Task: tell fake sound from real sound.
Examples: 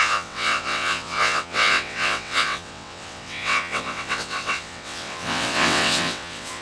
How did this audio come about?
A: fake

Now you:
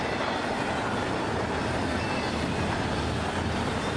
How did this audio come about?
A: real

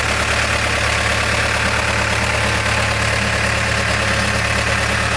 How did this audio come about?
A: real